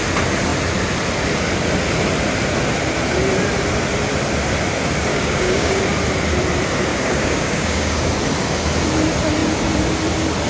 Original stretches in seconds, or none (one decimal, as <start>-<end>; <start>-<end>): 0.0-5.1; 5.8-6.9; 8.1-10.5